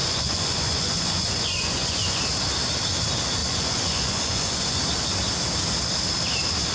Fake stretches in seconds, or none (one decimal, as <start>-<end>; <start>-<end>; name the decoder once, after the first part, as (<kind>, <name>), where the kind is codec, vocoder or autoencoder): 0.0-2.2 (vocoder, Vocos); 3.4-4.8